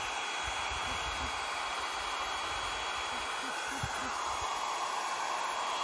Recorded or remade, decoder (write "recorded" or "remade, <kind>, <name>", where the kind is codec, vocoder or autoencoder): recorded